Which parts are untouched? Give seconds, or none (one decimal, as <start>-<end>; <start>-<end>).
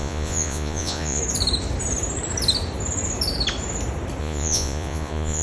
1.2-4.2